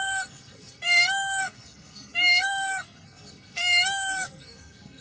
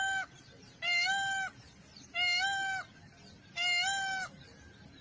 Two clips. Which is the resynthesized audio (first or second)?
first